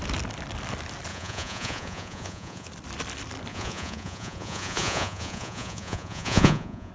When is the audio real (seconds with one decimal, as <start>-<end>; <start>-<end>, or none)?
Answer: 0.0-1.1; 2.7-3.5